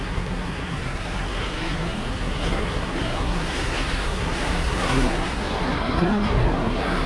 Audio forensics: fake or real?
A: fake